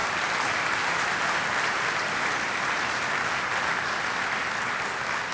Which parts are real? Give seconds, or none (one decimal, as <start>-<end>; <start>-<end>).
0.0-5.3